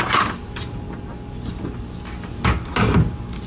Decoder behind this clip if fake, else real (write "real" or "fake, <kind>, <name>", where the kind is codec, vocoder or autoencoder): real